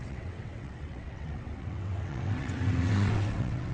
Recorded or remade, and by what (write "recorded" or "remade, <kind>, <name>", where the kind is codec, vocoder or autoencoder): remade, vocoder, WaveNeXt